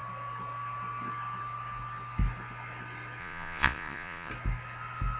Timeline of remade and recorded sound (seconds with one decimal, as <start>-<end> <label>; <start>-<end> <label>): 0.0-3.2 recorded; 3.2-4.3 remade; 4.3-5.2 recorded